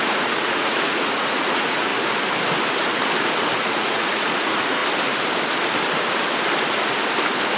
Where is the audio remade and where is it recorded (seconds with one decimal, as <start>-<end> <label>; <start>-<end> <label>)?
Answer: 0.0-1.9 remade; 1.9-3.6 recorded; 3.6-4.8 remade; 4.8-7.6 recorded